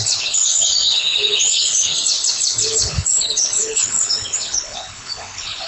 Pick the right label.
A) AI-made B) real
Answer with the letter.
A